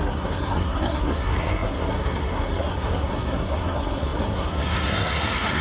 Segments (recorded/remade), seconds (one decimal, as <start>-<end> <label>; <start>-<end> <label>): 0.0-5.6 remade